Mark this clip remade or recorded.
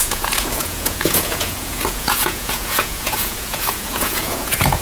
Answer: remade